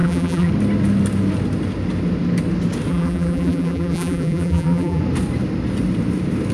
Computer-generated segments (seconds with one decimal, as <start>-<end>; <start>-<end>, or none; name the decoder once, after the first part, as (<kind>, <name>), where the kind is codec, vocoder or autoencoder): 0.0-0.5 (vocoder, BigVGAN v2); 2.9-5.0